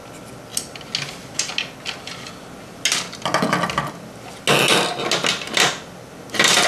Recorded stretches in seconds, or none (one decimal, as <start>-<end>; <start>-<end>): 0.0-6.7